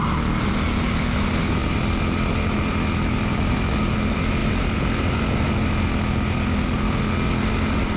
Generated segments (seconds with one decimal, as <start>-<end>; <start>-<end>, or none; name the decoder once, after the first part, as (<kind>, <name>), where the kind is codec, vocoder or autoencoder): none